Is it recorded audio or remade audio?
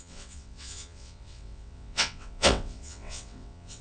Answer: remade